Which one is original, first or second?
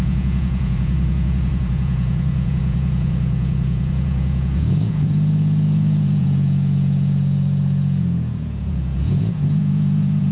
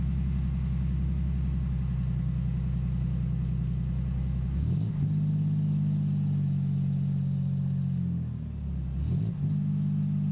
second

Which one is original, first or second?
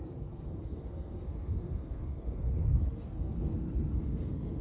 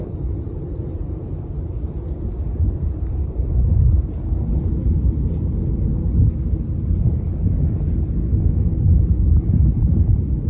second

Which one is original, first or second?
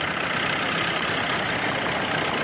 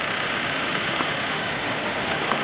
first